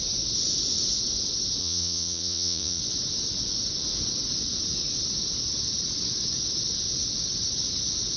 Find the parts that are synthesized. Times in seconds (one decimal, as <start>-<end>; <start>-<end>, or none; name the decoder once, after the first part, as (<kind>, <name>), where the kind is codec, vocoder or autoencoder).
1.6-2.8 (vocoder, Vocos)